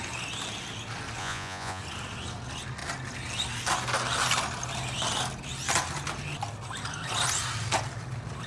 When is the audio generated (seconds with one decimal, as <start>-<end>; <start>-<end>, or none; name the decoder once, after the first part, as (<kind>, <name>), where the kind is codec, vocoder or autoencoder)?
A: 1.2-1.8 (vocoder, Vocos)